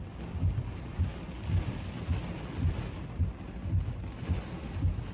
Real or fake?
real